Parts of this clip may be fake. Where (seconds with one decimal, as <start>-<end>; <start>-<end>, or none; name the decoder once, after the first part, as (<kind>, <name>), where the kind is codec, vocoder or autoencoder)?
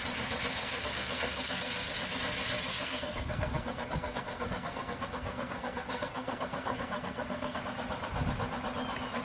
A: 0.6-1.9 (codec, SNAC); 2.7-7.6